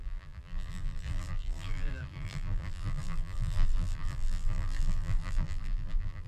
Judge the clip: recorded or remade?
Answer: remade